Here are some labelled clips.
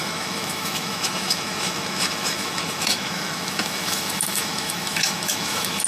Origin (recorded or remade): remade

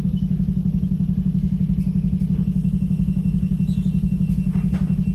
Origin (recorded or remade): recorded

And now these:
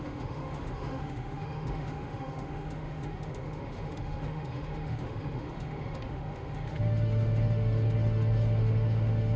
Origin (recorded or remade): remade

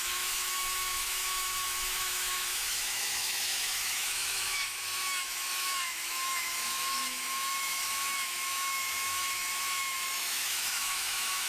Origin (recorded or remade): remade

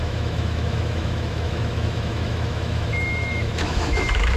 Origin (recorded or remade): remade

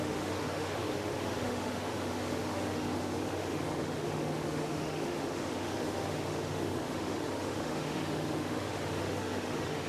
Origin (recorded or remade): remade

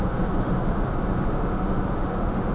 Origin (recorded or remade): remade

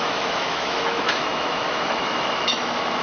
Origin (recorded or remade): remade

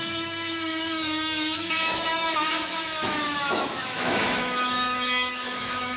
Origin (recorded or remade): remade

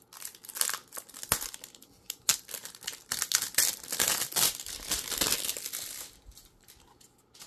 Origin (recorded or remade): recorded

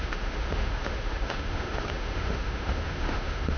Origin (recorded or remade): remade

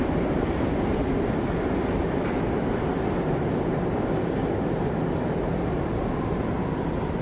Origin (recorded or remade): recorded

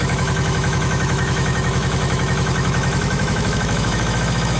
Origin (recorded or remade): remade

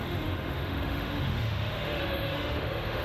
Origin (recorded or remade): remade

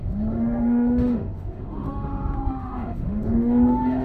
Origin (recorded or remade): remade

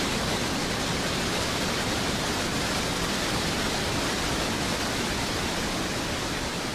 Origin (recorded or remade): recorded